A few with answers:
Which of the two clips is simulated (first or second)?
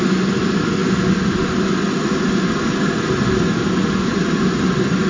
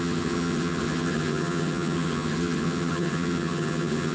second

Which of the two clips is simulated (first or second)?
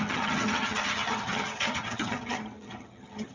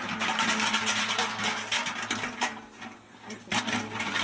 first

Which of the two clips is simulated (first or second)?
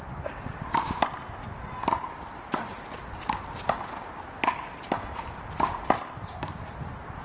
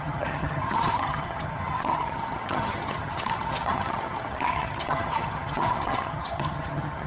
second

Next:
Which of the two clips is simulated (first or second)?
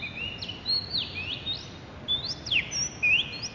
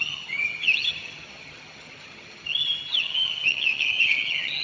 second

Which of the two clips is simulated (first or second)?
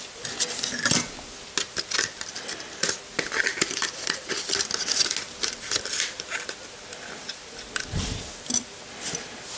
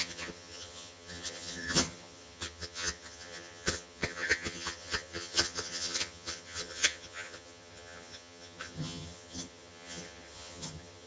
second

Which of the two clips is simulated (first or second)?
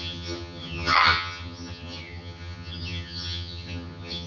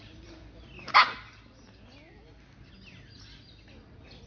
first